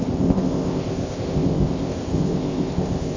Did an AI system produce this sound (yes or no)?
yes